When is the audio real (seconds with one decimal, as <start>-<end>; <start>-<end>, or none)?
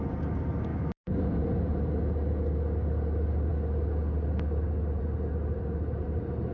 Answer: 0.0-0.7; 1.4-6.5